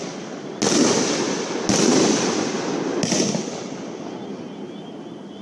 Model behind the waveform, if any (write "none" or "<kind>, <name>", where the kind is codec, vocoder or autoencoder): none